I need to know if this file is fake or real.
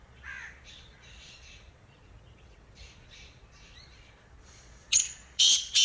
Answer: fake